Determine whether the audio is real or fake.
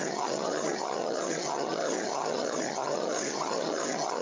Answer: fake